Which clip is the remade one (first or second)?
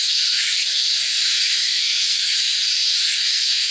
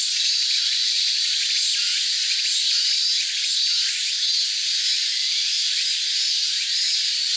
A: first